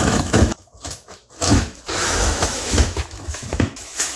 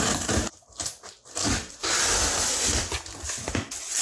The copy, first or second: first